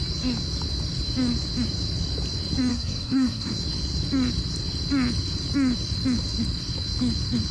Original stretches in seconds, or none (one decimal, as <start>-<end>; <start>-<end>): 0.0-2.7; 3.5-7.5